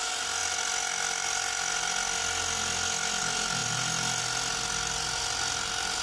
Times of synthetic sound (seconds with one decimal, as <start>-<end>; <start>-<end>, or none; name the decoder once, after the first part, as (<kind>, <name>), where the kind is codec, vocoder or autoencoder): none